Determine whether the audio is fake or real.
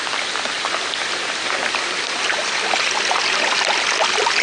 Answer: real